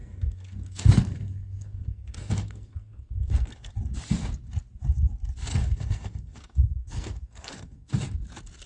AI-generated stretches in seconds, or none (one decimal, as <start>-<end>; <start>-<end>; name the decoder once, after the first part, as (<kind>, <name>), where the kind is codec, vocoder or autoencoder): 0.0-3.7 (codec, SNAC); 5.5-7.9